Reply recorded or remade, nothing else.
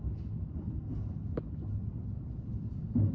recorded